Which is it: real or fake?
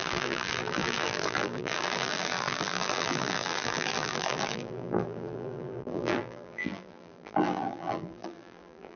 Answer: fake